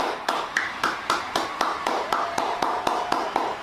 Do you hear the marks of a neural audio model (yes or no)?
yes